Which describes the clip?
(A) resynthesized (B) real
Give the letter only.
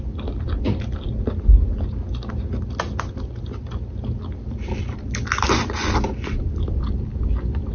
B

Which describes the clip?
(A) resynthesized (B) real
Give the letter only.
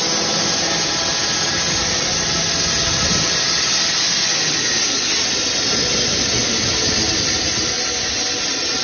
B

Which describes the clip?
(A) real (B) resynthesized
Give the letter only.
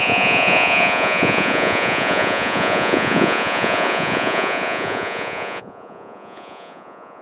B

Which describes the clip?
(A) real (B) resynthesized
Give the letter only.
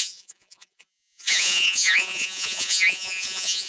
B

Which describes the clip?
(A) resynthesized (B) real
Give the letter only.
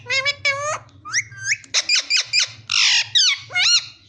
B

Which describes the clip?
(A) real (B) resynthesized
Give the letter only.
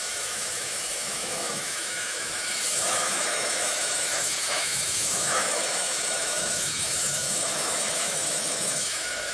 B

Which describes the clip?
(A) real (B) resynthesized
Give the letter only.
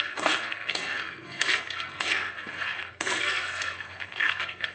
B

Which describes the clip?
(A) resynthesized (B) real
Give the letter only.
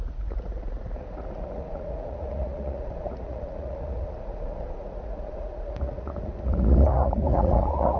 A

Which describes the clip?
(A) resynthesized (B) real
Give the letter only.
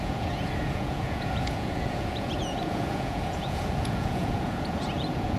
A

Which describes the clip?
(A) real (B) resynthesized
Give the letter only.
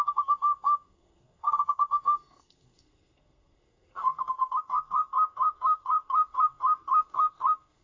B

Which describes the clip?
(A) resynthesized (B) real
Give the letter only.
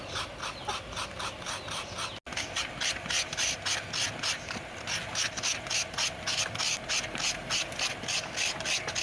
B